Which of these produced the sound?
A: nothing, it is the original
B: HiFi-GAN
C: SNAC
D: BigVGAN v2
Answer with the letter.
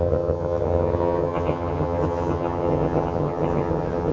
B